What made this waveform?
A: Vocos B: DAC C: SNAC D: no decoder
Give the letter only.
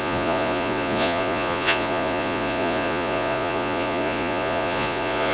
A